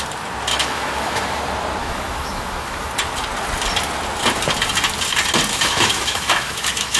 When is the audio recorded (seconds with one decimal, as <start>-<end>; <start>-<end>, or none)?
0.0-0.5; 1.4-1.8; 2.9-5.5